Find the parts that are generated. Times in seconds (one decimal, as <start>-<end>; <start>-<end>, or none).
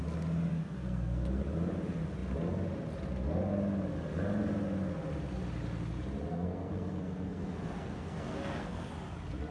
0.5-1.4; 6.3-8.9